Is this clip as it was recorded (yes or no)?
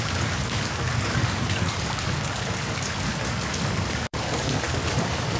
no